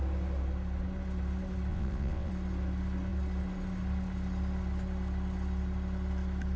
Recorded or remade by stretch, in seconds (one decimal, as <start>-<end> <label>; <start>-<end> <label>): 0.0-1.7 recorded; 1.7-2.3 remade; 2.3-6.6 recorded